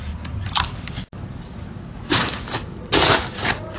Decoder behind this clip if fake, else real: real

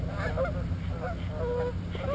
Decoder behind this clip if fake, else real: real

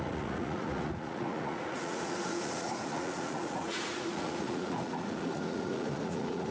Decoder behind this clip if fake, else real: fake, vocoder, Vocos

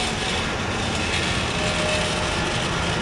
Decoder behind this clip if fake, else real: real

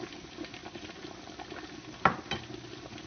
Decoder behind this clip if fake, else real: real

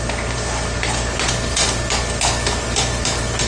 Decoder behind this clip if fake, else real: real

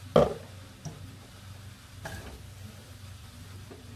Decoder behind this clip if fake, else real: real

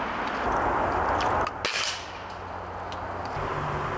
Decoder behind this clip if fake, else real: real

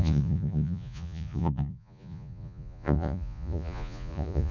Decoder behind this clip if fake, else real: fake, vocoder, Vocos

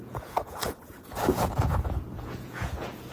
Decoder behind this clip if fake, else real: fake, vocoder, Vocos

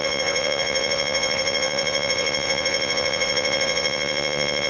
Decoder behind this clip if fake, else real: fake, vocoder, Vocos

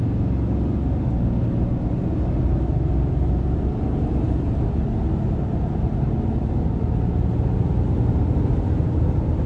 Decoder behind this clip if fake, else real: real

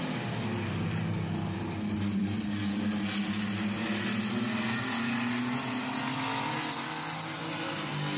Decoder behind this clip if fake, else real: real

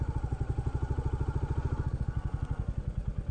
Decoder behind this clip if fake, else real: real